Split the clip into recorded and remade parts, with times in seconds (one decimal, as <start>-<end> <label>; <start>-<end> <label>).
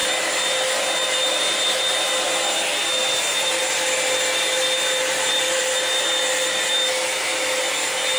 0.0-3.0 recorded; 3.0-3.6 remade; 3.6-5.0 recorded; 5.0-5.6 remade; 5.6-8.2 recorded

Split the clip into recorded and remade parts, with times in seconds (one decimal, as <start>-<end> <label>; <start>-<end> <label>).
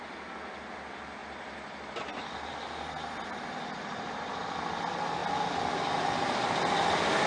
0.0-7.3 recorded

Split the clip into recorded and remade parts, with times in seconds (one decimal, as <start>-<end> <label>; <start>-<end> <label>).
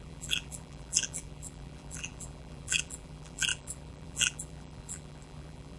0.0-5.8 remade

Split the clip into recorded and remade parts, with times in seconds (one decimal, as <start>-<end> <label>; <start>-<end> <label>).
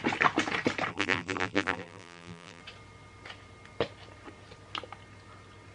0.0-0.9 recorded; 0.9-2.6 remade; 2.6-5.7 recorded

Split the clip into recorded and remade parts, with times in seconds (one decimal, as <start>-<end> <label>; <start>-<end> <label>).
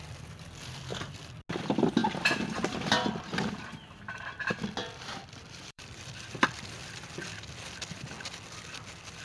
0.0-4.8 recorded; 4.8-7.0 remade; 7.0-9.2 recorded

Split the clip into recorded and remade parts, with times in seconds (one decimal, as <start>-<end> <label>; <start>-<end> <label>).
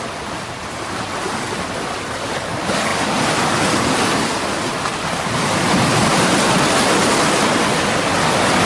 0.0-2.9 recorded; 2.9-7.3 remade; 7.3-8.7 recorded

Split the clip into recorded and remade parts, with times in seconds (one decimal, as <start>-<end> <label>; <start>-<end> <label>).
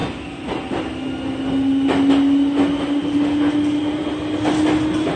0.0-5.2 recorded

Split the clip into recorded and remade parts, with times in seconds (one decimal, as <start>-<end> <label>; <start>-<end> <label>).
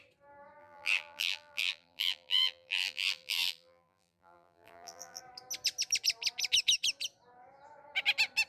0.0-0.6 recorded; 0.6-5.2 remade; 5.2-8.5 recorded